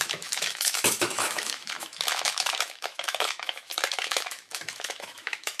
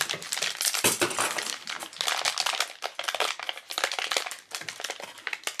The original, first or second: second